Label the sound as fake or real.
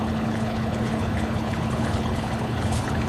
fake